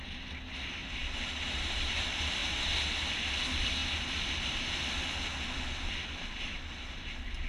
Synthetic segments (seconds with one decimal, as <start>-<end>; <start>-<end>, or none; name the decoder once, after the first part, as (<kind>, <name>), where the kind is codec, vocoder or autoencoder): 0.8-1.9 (vocoder, BigVGAN v2)